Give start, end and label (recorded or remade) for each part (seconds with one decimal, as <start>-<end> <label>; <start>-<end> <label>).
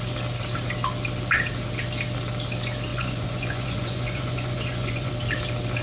0.0-2.9 recorded; 2.9-5.1 remade; 5.1-5.8 recorded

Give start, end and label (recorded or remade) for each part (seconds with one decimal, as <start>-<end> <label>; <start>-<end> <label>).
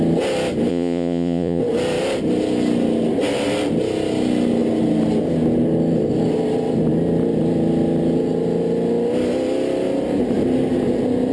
0.0-0.7 recorded; 0.7-1.6 remade; 1.6-11.3 recorded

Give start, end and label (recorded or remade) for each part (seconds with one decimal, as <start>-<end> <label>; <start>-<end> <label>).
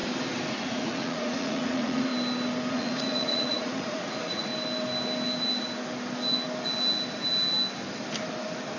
0.0-0.5 recorded; 0.5-2.1 remade; 2.1-2.7 recorded; 2.7-4.5 remade; 4.5-8.8 recorded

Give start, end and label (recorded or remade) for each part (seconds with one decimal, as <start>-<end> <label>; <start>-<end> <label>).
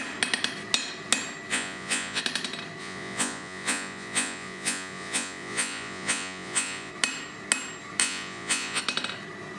0.0-1.5 recorded; 1.5-2.2 remade; 2.2-2.8 recorded; 2.8-6.9 remade; 6.9-8.0 recorded; 8.0-8.8 remade; 8.8-9.6 recorded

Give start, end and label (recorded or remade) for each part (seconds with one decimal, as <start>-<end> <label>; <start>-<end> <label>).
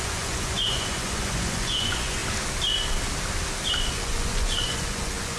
0.0-2.2 remade; 2.2-3.9 recorded; 3.9-5.4 remade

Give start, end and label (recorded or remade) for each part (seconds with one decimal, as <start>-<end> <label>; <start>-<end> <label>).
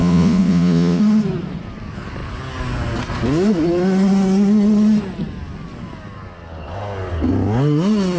0.0-1.0 remade; 1.0-8.2 recorded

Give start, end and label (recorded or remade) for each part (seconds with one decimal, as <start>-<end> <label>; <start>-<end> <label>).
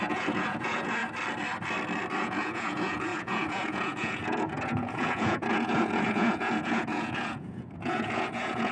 0.0-1.0 remade; 1.0-2.2 recorded; 2.2-8.7 remade